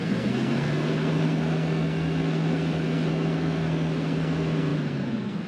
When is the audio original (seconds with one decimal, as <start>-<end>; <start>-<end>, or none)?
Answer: none